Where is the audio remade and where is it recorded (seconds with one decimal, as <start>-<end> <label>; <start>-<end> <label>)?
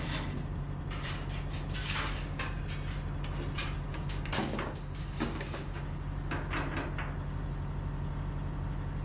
0.0-1.8 recorded; 1.8-2.6 remade; 2.6-3.9 recorded; 3.9-5.8 remade; 5.8-9.0 recorded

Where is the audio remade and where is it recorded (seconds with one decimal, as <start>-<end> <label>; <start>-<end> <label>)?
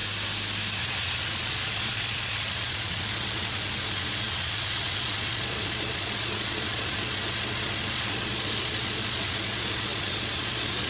0.0-0.8 recorded; 0.8-10.9 remade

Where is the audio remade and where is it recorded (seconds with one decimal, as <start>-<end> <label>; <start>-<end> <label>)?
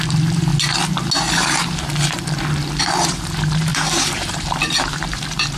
0.0-0.5 remade; 0.5-2.8 recorded; 2.8-5.6 remade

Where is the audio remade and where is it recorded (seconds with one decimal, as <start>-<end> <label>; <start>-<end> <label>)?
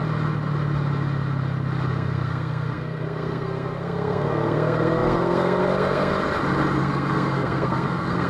0.0-1.9 recorded; 1.9-6.1 remade; 6.1-6.8 recorded; 6.8-8.3 remade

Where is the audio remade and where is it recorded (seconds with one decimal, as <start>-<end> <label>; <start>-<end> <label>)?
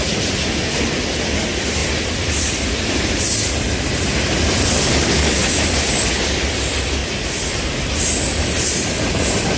0.0-1.8 recorded; 1.8-3.5 remade; 3.5-7.0 recorded; 7.0-7.5 remade; 7.5-9.6 recorded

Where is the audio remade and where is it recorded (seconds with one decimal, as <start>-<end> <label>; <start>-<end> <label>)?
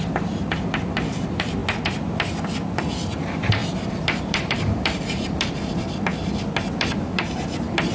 0.0-1.6 remade; 1.6-2.9 recorded; 2.9-6.1 remade; 6.1-6.7 recorded; 6.7-7.9 remade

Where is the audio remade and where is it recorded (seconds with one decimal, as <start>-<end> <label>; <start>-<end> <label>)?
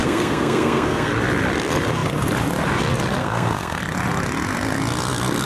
0.0-1.1 remade; 1.1-3.2 recorded; 3.2-3.8 remade; 3.8-5.5 recorded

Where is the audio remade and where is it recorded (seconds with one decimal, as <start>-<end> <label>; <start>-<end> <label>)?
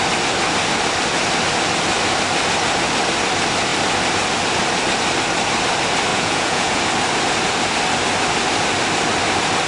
0.0-6.1 recorded; 6.1-6.8 remade; 6.8-9.7 recorded